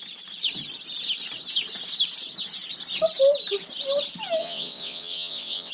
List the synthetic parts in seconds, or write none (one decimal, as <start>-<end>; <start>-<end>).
4.4-5.7